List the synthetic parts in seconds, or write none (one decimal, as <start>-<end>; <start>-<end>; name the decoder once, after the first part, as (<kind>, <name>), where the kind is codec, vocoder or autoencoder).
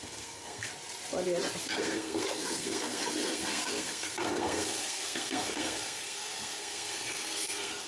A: 0.0-0.7 (codec, SNAC); 1.6-7.9